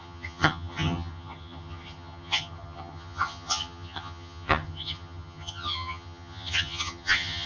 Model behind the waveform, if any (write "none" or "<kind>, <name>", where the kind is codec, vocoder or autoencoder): vocoder, HiFi-GAN